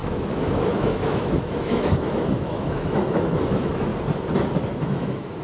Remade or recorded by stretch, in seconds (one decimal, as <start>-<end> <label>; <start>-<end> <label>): 0.0-3.9 remade; 3.9-4.8 recorded; 4.8-5.4 remade